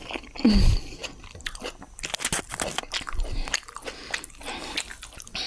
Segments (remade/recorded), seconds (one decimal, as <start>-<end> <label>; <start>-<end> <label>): 0.0-5.5 recorded